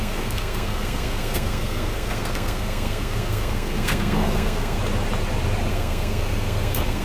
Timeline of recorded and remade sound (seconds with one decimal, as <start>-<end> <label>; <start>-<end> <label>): 0.0-4.8 remade; 4.8-5.7 recorded; 5.7-7.0 remade